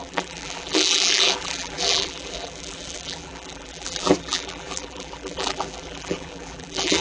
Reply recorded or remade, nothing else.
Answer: remade